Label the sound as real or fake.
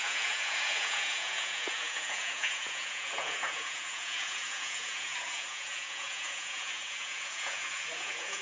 fake